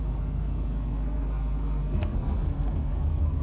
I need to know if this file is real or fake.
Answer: fake